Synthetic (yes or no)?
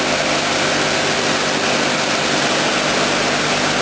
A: no